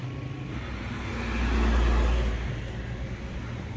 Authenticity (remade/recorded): recorded